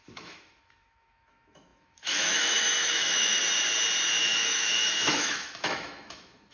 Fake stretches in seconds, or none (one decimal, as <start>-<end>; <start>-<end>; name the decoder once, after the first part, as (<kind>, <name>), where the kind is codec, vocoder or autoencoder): 0.0-3.4 (autoencoder, DAC-VAE); 4.2-6.5